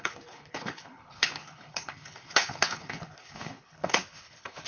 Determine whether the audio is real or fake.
fake